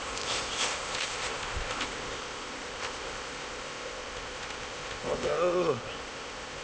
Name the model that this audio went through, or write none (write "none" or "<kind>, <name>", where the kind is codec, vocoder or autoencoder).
codec, ZipCodec